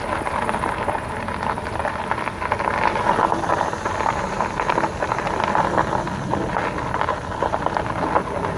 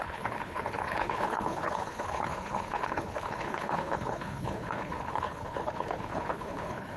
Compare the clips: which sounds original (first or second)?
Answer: first